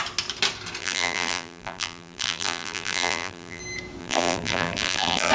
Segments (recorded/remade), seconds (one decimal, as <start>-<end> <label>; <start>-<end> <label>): 0.0-0.8 recorded; 0.8-3.6 remade; 3.6-4.0 recorded; 4.0-5.3 remade